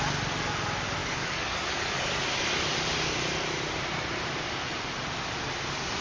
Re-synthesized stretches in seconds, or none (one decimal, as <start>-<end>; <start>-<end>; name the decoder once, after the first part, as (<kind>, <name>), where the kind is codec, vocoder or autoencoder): 1.0-2.1 (codec, DAC)